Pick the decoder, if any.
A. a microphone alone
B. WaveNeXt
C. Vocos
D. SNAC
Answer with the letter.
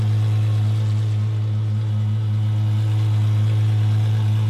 A